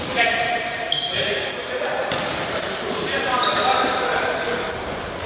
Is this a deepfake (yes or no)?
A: yes